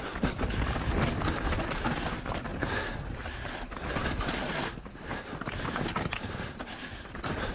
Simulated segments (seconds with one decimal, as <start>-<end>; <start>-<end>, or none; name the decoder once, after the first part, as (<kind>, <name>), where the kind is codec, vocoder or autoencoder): 2.5-3.0 (vocoder, BigVGAN v2)